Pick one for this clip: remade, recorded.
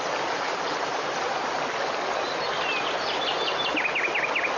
recorded